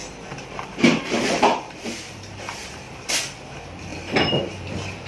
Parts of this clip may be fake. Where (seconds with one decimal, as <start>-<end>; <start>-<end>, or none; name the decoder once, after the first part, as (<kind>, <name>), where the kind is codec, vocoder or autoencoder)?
0.0-3.1 (vocoder, BigVGAN v2)